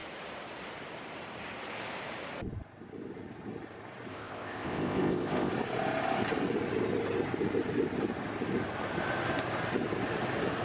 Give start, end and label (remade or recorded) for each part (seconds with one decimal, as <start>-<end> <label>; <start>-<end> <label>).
0.0-4.1 recorded; 4.1-5.5 remade; 5.5-10.6 recorded